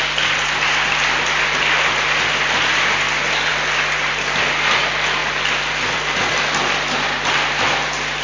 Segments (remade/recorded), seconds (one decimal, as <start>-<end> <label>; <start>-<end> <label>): 0.0-8.2 recorded